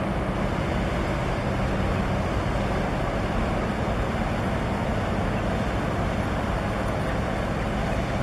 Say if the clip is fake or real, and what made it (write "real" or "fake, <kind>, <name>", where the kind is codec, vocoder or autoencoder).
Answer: real